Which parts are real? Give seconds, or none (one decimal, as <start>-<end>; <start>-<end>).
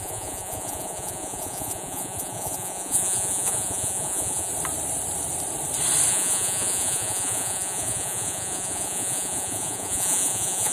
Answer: 4.5-6.1